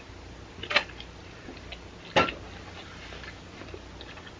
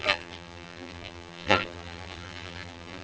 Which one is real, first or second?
first